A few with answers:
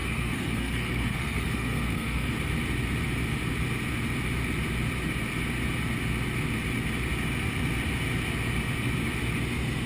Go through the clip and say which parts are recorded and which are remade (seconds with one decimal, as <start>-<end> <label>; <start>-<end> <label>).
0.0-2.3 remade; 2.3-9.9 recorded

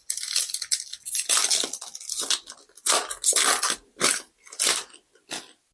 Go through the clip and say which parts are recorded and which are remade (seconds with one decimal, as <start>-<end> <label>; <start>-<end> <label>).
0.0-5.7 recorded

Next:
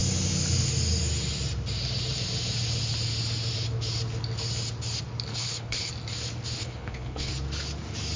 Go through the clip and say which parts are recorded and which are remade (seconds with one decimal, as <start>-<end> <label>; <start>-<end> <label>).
0.0-5.3 recorded; 5.3-5.9 remade; 5.9-6.6 recorded; 6.6-7.3 remade; 7.3-8.2 recorded